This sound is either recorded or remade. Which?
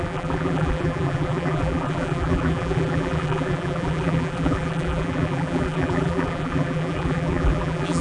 remade